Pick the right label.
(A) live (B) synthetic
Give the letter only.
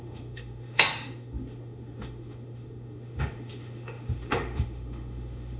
B